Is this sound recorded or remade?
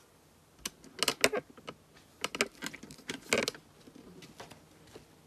recorded